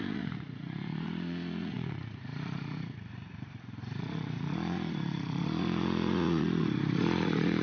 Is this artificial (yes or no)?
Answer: yes